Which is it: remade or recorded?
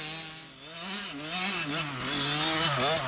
recorded